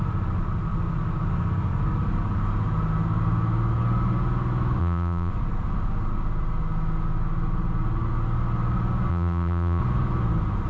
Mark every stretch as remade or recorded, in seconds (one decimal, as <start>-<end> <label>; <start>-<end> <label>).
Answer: 0.0-4.8 recorded; 4.8-5.3 remade; 5.3-9.1 recorded; 9.1-9.8 remade; 9.8-10.7 recorded